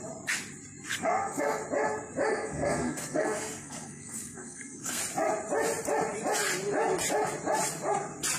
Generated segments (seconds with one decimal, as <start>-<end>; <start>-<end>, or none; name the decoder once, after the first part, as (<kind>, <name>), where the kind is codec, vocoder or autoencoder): 0.9-1.6 (codec, SNAC); 2.3-5.0